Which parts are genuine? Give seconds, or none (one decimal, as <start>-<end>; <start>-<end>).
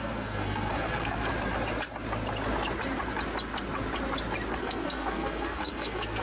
1.3-4.6